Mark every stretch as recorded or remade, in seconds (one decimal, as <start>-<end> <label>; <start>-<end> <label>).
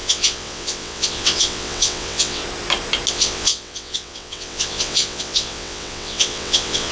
0.0-2.4 remade; 2.4-3.1 recorded; 3.1-6.9 remade